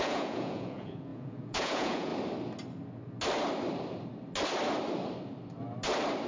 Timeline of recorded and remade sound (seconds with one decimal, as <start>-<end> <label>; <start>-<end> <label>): 0.0-2.1 remade; 2.1-6.3 recorded

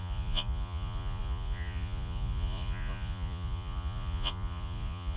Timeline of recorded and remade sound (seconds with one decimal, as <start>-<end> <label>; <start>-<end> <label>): 0.0-5.2 remade

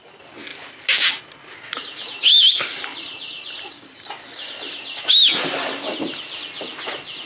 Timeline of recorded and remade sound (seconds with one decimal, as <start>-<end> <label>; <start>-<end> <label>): 0.0-7.3 recorded

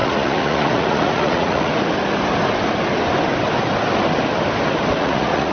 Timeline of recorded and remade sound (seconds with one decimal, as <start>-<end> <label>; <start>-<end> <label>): 0.0-1.7 remade; 1.7-5.0 recorded; 5.0-5.5 remade

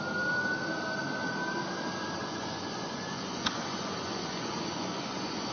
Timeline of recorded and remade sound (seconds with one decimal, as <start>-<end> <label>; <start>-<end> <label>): 0.0-2.2 recorded; 2.2-5.5 remade

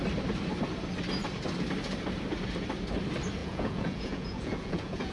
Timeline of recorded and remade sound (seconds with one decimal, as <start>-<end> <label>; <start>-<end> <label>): 0.0-3.4 recorded; 3.4-5.1 remade

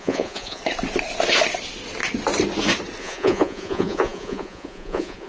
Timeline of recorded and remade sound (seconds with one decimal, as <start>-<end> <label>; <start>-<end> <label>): 0.0-0.6 remade; 0.6-3.0 recorded; 3.0-5.3 remade

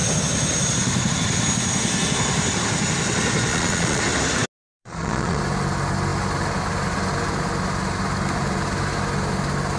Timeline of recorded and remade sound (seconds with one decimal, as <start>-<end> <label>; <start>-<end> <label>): 0.0-3.5 recorded; 3.5-4.0 remade; 4.0-4.8 recorded; 4.8-5.4 remade; 5.4-9.8 recorded